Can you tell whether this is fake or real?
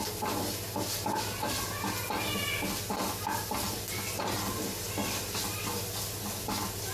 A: real